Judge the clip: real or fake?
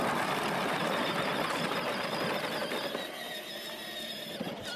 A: real